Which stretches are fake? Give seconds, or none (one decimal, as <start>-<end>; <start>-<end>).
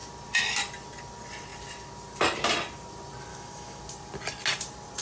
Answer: 3.3-3.8